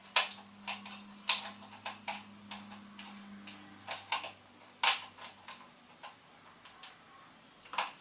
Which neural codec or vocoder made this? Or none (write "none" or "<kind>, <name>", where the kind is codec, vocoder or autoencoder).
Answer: none